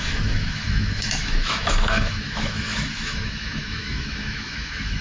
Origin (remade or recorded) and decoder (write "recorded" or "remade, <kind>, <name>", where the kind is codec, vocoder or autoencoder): remade, autoencoder, DAC-VAE